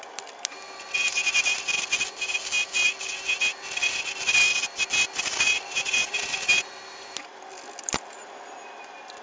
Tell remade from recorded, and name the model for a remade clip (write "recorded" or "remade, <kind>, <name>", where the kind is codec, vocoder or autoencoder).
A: recorded